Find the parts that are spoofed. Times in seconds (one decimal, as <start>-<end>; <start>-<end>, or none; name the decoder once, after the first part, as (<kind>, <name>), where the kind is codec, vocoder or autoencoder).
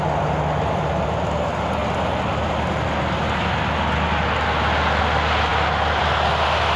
none